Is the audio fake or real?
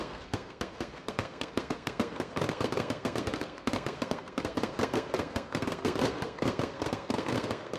fake